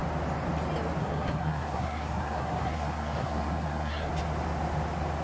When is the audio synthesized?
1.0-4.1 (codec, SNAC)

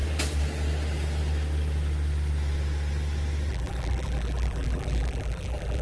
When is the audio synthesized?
3.5-5.8 (vocoder, BigVGAN v2)

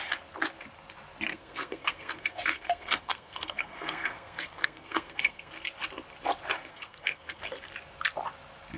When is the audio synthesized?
1.3-5.5 (codec, SNAC); 6.7-7.4

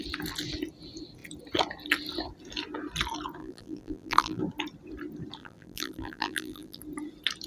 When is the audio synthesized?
3.4-4.4 (vocoder, BigVGAN v2); 5.4-6.8